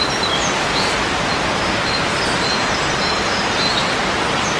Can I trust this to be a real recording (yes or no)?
no